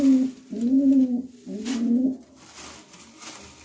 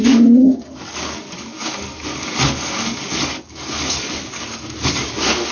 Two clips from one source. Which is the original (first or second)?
first